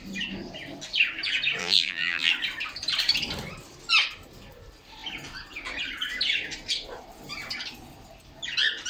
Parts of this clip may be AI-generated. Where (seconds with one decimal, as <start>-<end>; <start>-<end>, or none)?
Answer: 1.6-2.3